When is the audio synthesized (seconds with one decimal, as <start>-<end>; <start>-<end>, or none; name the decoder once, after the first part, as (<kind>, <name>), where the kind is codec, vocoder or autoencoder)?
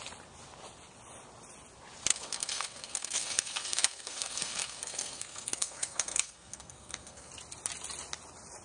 2.1-7.3 (codec, SNAC)